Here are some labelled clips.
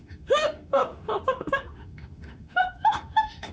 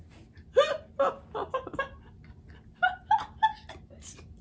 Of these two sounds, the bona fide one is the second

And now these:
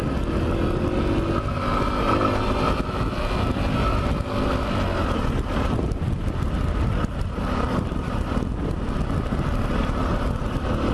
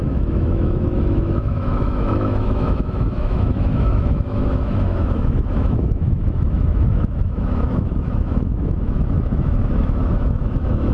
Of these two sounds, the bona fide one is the first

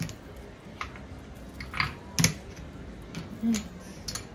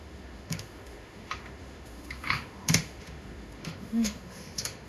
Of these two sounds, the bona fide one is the first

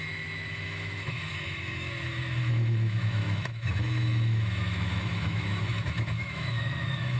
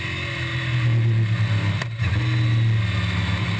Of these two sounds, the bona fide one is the second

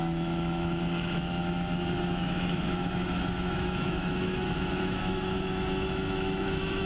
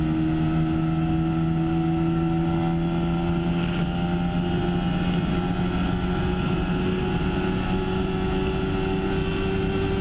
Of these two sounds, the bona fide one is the second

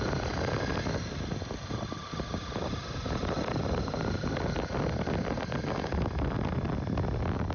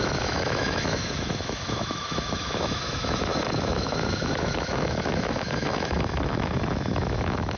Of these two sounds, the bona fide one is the first